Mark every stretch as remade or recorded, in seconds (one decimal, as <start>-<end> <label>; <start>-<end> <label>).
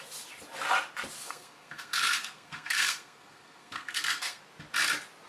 0.0-1.2 recorded; 1.2-4.4 remade; 4.4-5.3 recorded